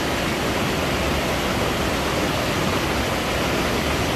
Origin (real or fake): real